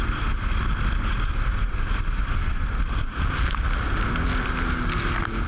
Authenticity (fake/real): real